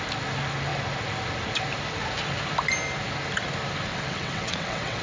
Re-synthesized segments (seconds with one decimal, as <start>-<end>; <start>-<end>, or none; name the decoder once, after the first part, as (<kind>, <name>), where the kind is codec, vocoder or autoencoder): 3.9-5.0 (vocoder, WaveNeXt)